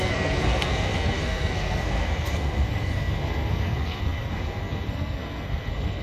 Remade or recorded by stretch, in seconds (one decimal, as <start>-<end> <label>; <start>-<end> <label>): 0.0-6.0 remade